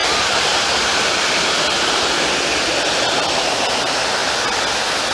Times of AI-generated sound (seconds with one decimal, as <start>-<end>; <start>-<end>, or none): none